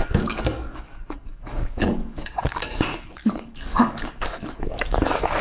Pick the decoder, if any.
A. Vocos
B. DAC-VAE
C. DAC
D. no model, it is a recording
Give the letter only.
C